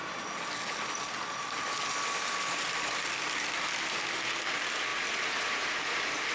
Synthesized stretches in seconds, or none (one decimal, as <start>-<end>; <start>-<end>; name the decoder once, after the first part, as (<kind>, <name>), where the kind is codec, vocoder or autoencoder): none